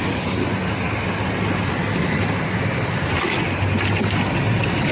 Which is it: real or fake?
real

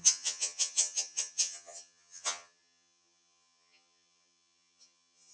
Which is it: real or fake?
fake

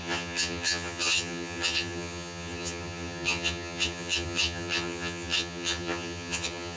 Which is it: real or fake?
fake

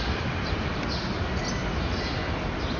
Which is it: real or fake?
real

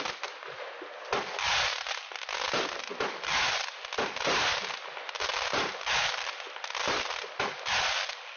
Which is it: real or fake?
real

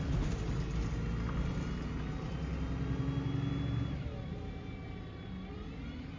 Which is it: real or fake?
real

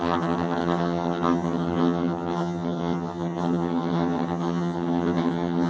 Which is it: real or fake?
fake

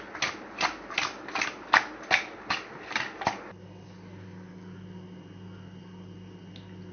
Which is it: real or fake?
real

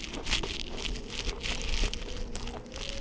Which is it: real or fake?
real